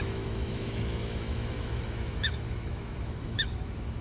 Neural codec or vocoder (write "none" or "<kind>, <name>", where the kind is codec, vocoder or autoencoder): autoencoder, DAC-VAE